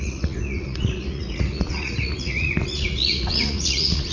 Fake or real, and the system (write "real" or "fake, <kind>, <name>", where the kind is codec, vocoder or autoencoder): fake, vocoder, Vocos